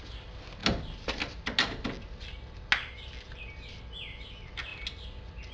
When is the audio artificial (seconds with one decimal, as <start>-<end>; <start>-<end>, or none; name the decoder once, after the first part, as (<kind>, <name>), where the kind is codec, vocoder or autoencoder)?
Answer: none